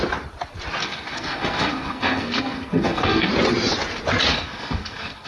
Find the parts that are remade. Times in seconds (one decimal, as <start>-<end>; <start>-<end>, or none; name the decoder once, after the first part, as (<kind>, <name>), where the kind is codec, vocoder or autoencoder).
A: 0.8-3.3 (codec, SNAC); 4.3-5.3